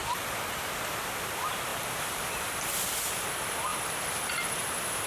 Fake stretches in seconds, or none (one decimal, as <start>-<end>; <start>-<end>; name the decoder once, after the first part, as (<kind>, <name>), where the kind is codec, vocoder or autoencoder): 0.0-0.6 (vocoder, BigVGAN v2); 1.7-2.4

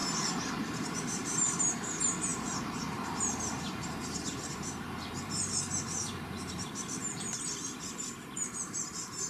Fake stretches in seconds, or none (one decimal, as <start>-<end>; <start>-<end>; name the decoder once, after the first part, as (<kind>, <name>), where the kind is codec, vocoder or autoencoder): 0.6-9.3 (vocoder, BigVGAN v2)

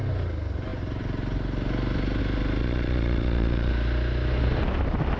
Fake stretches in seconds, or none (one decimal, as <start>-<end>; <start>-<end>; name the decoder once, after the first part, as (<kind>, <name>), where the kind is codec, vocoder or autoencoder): 2.6-3.7 (vocoder, Vocos)

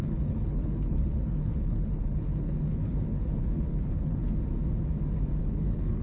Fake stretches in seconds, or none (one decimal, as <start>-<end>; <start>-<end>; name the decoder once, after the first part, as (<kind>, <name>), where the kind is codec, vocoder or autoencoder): 0.0-4.2 (codec, HILCodec); 5.4-6.0